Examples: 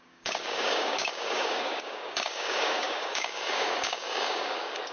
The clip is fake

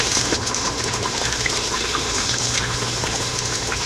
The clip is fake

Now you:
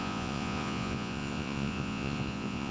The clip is fake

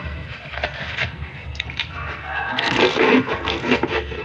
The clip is fake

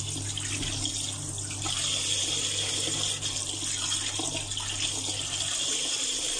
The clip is real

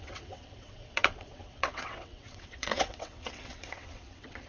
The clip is fake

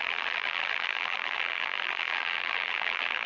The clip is fake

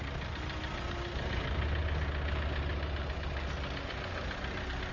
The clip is real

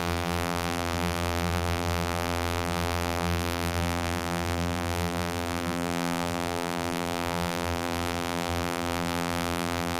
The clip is fake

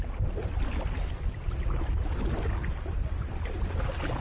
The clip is real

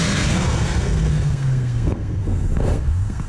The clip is fake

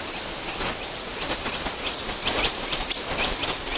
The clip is real